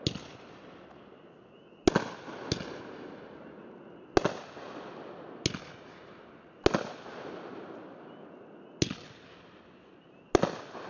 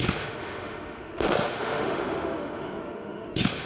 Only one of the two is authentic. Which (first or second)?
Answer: first